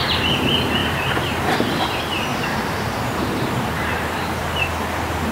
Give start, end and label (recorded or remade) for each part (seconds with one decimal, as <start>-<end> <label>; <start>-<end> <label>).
0.0-0.8 recorded; 0.8-1.8 remade; 1.8-2.3 recorded; 2.3-4.7 remade; 4.7-5.3 recorded